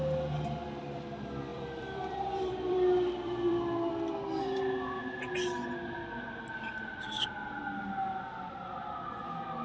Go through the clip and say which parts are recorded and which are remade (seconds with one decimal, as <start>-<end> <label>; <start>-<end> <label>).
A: 0.0-1.5 recorded; 1.5-3.9 remade; 3.9-9.6 recorded